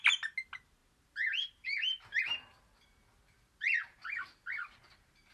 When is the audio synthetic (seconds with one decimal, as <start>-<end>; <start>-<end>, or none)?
none